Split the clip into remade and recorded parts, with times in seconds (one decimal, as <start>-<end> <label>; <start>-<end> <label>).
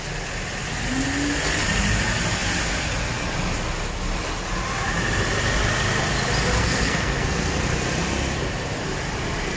0.0-6.6 recorded; 6.6-7.5 remade; 7.5-9.6 recorded